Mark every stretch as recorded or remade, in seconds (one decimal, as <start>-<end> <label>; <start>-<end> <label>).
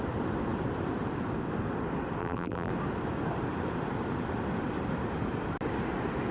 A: 0.0-2.2 recorded; 2.2-2.7 remade; 2.7-6.3 recorded